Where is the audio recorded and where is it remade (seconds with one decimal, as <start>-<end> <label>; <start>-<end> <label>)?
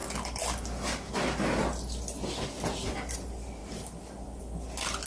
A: 0.0-5.1 recorded